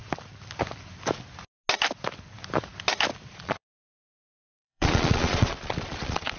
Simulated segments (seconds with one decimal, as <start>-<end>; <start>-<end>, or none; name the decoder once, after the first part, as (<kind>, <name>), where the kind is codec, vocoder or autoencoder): 3.3-6.4 (vocoder, Vocos)